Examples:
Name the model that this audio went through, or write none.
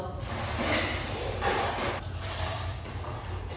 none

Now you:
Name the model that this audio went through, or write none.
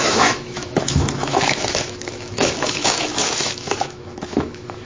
autoencoder, DAC-VAE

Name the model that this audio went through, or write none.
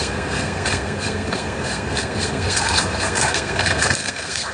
codec, SNAC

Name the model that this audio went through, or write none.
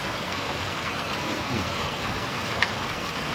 codec, SNAC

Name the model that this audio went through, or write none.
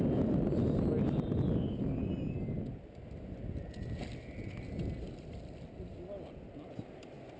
none